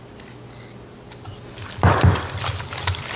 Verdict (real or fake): real